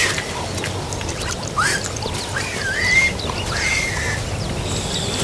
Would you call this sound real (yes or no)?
yes